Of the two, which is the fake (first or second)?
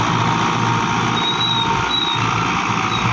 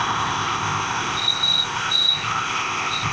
second